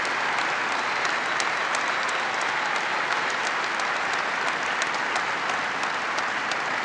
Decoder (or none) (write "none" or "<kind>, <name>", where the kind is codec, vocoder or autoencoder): none